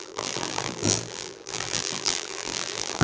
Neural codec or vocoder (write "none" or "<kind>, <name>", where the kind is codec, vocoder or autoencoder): vocoder, BigVGAN v2